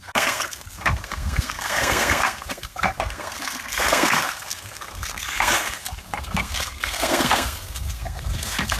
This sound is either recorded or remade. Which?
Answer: remade